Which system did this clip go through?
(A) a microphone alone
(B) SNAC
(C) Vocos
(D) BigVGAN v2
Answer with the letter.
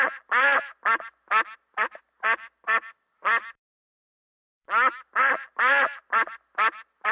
D